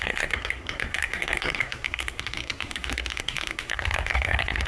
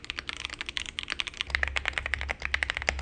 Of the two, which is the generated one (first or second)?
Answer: first